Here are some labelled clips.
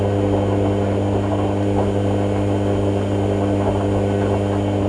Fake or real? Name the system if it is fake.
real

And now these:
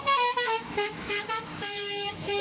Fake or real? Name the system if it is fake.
fake, autoencoder, DAC-VAE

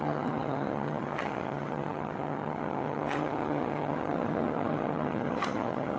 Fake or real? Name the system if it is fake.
fake, vocoder, HiFi-GAN